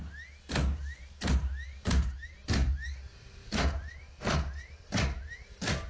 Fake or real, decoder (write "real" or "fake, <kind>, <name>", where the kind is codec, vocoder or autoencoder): real